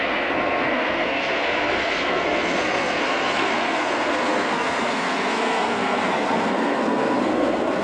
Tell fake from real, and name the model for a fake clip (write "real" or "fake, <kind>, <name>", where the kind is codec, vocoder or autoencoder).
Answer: fake, codec, SNAC